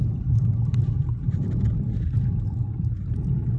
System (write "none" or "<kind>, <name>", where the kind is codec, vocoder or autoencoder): none